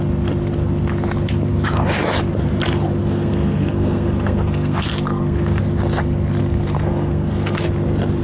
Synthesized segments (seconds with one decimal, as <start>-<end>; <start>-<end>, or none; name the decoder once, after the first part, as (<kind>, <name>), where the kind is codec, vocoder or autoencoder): 3.0-5.6 (codec, SNAC); 6.4-7.7